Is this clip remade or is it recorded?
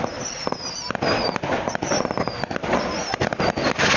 recorded